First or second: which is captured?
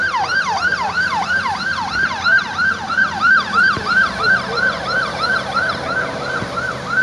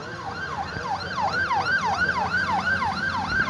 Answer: second